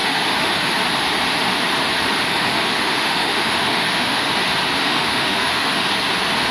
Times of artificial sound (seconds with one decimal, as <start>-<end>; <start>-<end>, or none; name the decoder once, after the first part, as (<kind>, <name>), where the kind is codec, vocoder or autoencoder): 0.0-0.7 (autoencoder, DAC-VAE); 2.2-4.3; 4.8-5.9